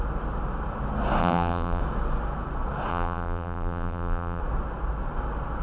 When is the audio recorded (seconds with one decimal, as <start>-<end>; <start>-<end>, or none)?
0.0-1.2; 1.8-2.9; 4.4-5.6